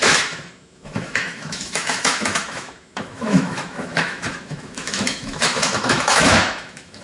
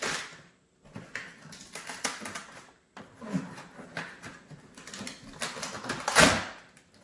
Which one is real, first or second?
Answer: second